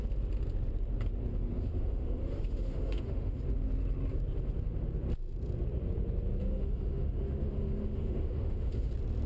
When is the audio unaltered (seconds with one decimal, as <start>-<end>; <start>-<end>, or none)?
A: 0.0-1.3; 3.4-6.4; 8.9-9.3